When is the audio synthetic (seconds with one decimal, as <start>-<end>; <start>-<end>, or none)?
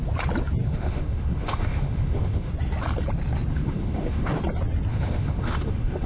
0.6-2.5; 3.5-4.4; 4.9-6.1